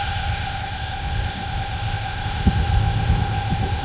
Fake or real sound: fake